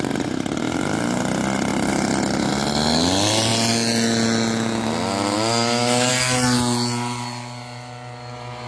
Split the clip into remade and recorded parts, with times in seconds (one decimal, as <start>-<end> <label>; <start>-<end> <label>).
0.0-8.7 recorded